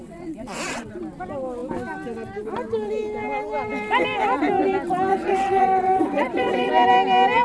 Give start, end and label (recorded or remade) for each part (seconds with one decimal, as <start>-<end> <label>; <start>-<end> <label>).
0.0-1.0 remade; 1.0-5.1 recorded; 5.1-6.7 remade; 6.7-7.4 recorded